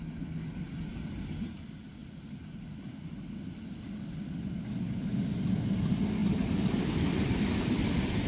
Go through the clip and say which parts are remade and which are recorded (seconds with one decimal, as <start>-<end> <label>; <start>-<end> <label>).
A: 0.0-8.3 recorded

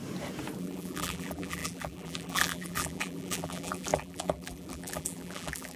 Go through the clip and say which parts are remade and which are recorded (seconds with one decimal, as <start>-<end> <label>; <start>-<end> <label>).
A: 0.0-0.6 recorded; 0.6-5.8 remade